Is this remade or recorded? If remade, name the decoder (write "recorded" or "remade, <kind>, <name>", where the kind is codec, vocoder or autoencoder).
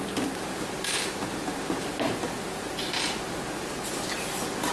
recorded